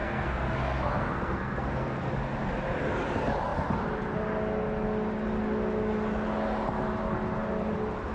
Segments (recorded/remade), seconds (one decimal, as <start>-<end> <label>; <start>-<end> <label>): 0.0-2.1 remade; 2.1-8.1 recorded